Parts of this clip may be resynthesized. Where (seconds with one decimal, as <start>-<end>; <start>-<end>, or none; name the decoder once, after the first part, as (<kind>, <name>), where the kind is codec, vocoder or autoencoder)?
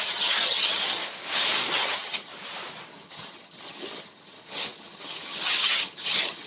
0.0-1.0 (vocoder, HiFi-GAN); 1.7-2.3; 2.9-6.5